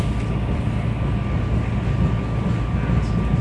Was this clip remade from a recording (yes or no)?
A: no